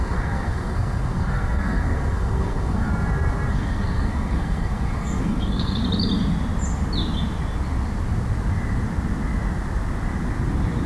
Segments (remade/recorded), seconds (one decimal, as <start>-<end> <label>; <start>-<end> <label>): 0.0-2.9 remade; 2.9-3.5 recorded; 3.5-5.8 remade; 5.8-10.9 recorded